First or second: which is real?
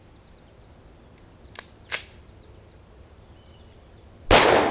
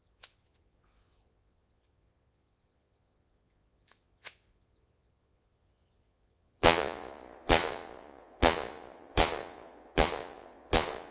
first